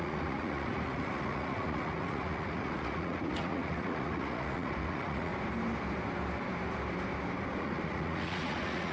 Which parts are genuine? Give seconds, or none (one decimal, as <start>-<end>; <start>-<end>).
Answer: 5.3-7.6